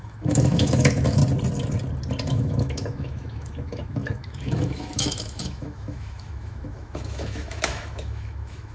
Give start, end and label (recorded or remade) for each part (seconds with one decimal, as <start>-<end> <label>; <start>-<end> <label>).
0.0-1.2 remade; 1.2-2.3 recorded; 2.3-8.7 remade